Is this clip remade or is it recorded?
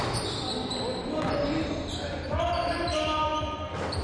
recorded